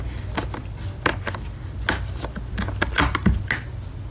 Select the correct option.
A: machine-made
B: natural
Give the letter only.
B